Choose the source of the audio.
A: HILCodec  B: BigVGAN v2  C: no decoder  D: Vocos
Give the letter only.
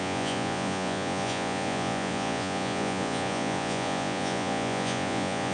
D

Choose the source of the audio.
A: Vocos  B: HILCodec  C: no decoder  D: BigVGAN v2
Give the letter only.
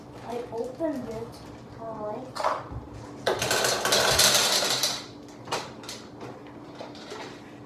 C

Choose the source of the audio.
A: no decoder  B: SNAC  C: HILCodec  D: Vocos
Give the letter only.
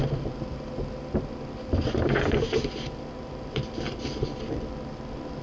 A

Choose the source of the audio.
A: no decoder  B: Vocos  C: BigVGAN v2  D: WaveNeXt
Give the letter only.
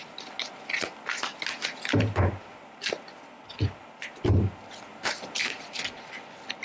A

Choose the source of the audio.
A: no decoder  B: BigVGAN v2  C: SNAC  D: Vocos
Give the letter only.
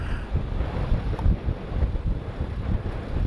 A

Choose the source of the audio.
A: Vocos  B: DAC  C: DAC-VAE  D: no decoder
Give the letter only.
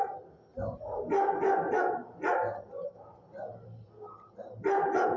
D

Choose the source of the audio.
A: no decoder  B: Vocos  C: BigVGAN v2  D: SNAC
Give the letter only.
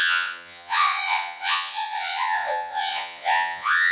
B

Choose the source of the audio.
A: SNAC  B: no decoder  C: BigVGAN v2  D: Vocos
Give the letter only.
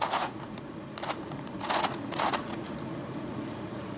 D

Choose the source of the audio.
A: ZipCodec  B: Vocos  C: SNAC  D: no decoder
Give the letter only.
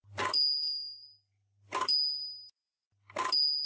D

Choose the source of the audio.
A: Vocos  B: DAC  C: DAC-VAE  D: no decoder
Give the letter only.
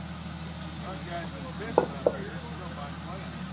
D